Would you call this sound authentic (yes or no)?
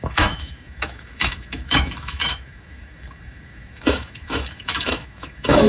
no